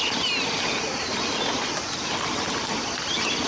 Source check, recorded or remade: recorded